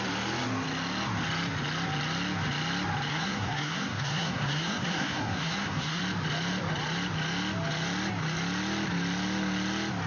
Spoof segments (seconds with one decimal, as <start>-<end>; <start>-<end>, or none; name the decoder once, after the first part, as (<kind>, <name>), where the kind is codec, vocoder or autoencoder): 3.1-6.0 (codec, SNAC)